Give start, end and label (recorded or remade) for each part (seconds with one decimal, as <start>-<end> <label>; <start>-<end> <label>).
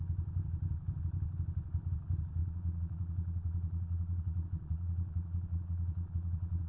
0.0-2.4 recorded; 2.4-6.7 remade